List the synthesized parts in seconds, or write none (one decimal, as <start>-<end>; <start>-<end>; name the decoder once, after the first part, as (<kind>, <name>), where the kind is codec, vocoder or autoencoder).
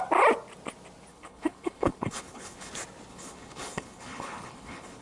1.1-2.7 (codec, HILCodec); 3.1-5.0